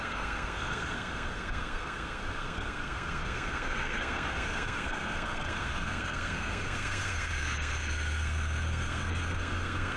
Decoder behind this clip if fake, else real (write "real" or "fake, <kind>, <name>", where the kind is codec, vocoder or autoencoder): fake, codec, SNAC